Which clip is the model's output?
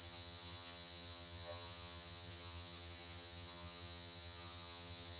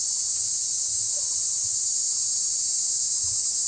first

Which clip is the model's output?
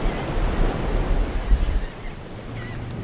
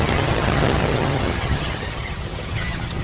second